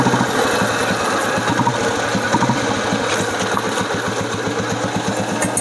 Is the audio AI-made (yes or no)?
no